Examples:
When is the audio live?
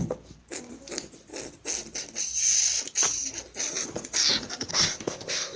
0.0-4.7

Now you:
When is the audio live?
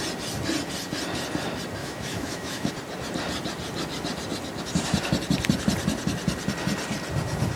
0.0-1.8; 2.7-7.6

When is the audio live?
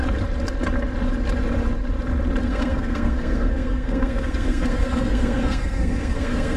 0.0-2.4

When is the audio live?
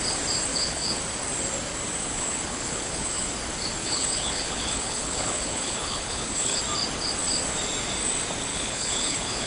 0.0-0.5; 1.0-2.0; 3.3-3.8; 6.6-8.5